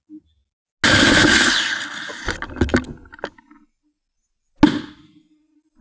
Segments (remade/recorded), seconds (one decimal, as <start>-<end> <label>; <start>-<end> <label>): 0.0-5.8 recorded